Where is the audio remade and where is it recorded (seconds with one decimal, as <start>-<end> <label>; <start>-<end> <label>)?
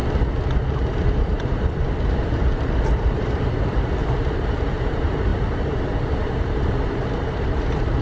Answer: 0.0-0.7 recorded; 0.7-8.0 remade